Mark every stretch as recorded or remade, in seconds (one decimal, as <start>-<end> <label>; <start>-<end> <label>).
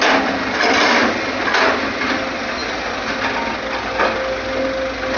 0.0-5.2 recorded